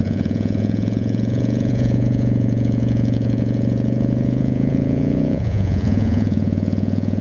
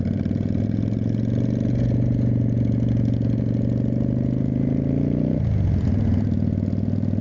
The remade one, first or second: first